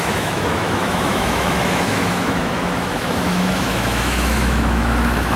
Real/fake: fake